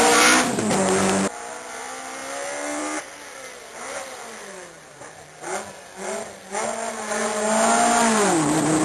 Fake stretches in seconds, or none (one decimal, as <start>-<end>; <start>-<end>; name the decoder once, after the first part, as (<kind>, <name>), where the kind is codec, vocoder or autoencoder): none

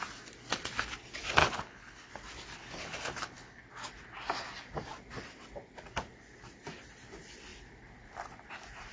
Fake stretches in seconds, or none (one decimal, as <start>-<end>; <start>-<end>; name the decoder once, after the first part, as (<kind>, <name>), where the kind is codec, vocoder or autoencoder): 1.4-2.1 (codec, HILCodec); 2.6-3.6

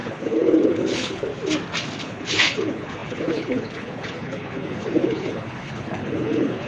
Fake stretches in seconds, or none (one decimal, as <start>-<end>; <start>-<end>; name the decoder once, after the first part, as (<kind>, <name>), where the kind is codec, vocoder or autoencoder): 0.0-1.3 (codec, HILCodec); 2.0-6.7

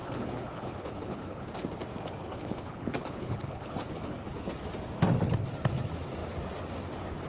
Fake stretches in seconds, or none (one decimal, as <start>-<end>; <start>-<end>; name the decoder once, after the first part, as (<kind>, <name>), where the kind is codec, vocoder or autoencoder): 0.0-1.4 (codec, HILCodec); 2.2-4.5

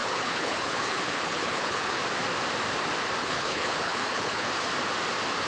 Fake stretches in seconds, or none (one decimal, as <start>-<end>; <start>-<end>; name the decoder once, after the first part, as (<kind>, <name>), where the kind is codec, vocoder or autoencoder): 0.0-2.0 (codec, HILCodec); 3.2-4.5

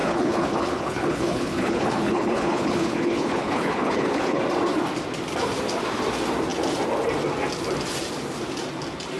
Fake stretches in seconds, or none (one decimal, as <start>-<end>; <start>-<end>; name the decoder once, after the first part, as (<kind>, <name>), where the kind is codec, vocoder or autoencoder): 0.0-4.4 (codec, HILCodec)

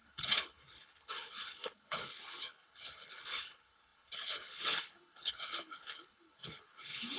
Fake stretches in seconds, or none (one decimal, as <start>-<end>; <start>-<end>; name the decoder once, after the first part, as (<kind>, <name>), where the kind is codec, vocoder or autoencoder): 0.0-7.2 (codec, HILCodec)

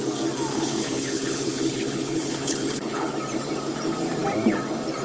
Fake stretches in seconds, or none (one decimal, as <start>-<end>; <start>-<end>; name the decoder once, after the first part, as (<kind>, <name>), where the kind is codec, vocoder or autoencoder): 0.5-3.1 (codec, HILCodec)